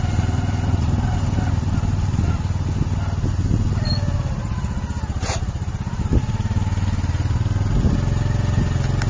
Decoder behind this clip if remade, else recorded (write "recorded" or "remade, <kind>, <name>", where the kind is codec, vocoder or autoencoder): recorded